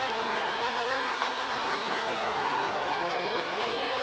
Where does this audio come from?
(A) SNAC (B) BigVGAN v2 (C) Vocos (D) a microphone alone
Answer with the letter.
A